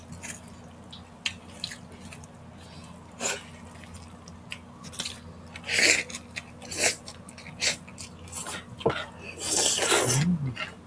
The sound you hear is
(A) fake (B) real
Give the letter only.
B